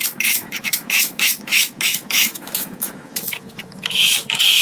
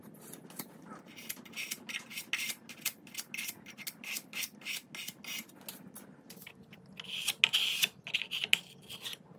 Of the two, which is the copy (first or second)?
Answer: first